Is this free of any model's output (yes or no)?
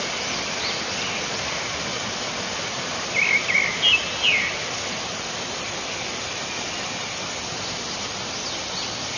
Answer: yes